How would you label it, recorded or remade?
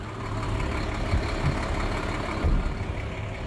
recorded